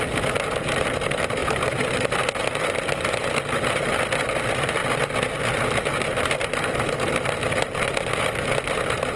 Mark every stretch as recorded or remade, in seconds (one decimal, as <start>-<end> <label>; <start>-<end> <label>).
0.0-9.2 recorded